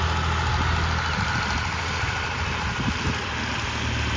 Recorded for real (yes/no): yes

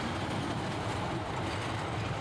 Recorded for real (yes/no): yes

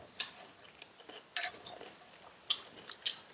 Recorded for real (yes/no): yes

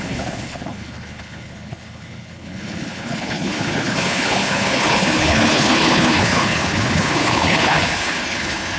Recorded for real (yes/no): no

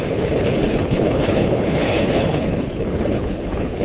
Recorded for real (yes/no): no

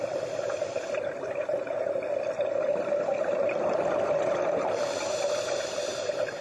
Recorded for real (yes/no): yes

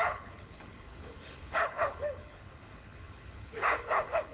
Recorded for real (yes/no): no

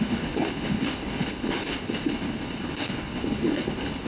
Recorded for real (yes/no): no